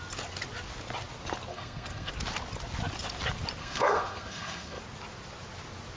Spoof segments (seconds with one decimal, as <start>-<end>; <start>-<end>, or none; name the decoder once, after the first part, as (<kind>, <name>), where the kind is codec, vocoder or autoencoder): 1.5-2.1 (codec, SNAC); 3.6-4.8